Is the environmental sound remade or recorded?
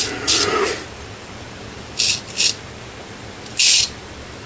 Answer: recorded